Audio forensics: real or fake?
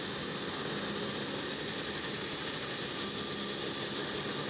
real